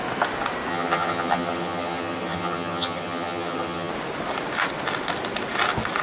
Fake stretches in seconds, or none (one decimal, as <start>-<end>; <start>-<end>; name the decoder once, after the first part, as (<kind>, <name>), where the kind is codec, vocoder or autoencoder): 0.7-3.9 (vocoder, HiFi-GAN)